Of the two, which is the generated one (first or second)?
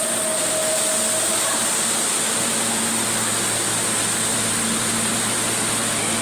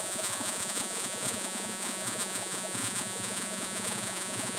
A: second